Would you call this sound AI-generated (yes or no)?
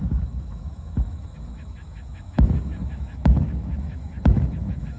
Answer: yes